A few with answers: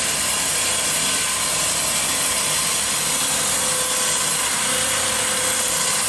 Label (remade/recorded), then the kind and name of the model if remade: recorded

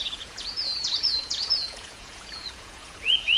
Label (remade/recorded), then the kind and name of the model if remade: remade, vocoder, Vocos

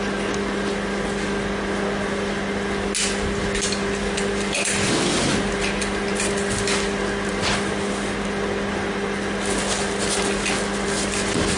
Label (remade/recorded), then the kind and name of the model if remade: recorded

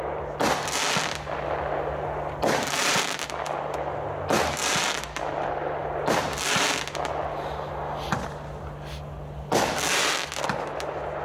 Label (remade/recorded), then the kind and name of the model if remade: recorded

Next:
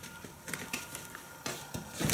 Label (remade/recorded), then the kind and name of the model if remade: recorded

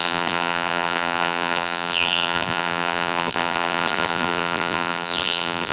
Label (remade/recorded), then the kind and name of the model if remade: remade, vocoder, BigVGAN v2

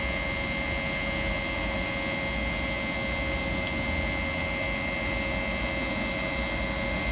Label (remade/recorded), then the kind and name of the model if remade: recorded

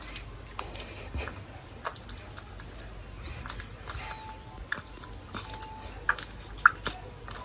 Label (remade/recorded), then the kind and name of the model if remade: recorded